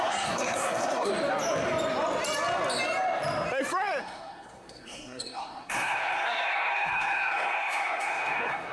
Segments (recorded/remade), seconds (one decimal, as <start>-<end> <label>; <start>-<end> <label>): 0.0-1.1 remade; 1.1-4.0 recorded; 4.0-8.7 remade